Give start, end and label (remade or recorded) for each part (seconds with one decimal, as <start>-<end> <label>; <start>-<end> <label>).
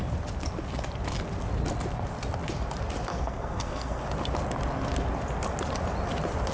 0.0-3.1 recorded; 3.1-4.0 remade; 4.0-6.5 recorded